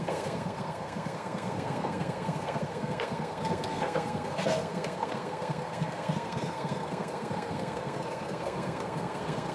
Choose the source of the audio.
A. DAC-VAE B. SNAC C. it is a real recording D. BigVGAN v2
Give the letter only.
B